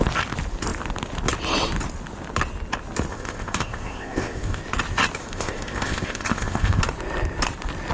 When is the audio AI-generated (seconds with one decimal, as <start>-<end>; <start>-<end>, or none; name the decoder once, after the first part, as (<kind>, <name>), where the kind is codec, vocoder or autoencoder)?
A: 3.1-4.6 (codec, ZipCodec); 5.2-6.8